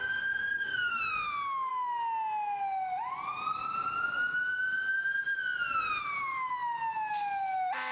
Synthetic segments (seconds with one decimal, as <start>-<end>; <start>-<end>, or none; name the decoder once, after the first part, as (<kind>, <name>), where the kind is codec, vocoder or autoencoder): 0.5-1.0 (codec, SNAC)